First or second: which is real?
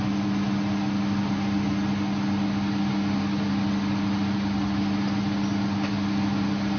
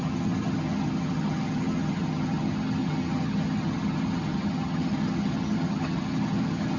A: first